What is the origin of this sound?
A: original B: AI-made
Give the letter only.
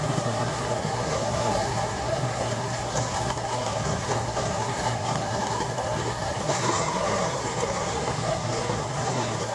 B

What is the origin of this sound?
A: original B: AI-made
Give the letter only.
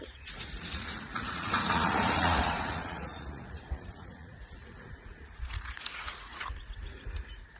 B